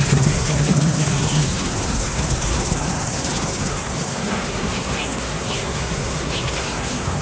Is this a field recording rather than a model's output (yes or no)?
no